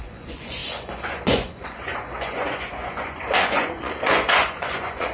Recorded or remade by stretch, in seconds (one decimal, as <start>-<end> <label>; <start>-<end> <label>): 0.0-5.1 remade